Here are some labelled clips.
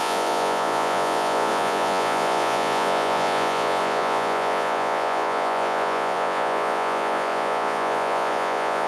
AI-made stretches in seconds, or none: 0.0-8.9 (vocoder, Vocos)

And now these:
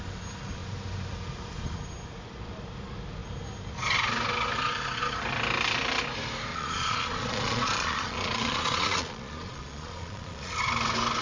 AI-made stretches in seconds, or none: 6.5-10.5 (vocoder, Vocos)

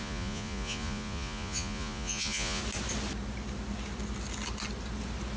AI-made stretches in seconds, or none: 0.0-2.6 (vocoder, Vocos)

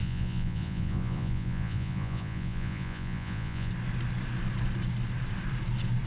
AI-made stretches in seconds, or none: 0.0-3.7 (vocoder, Vocos)

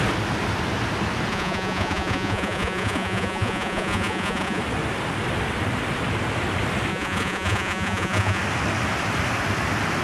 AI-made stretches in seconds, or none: 1.3-4.6 (vocoder, Vocos); 6.9-8.4

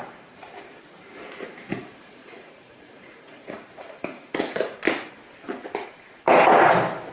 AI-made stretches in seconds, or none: 2.2-4.8 (vocoder, Vocos)

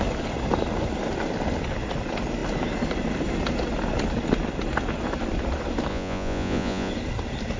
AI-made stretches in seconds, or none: 5.9-6.9 (vocoder, Vocos)